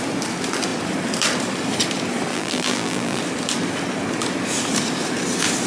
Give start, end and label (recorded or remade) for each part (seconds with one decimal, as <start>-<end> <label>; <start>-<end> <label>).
0.0-2.3 recorded; 2.3-3.2 remade; 3.2-5.7 recorded